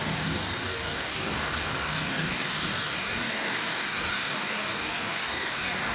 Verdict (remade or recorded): remade